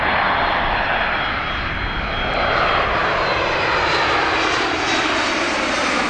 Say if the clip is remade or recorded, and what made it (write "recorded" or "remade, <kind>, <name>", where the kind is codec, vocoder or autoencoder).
recorded